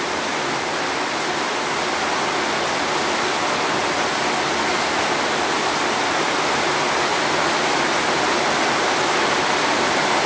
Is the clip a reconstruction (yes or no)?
no